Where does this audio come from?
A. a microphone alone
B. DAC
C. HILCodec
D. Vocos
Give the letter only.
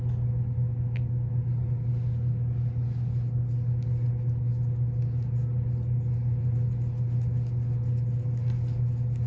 A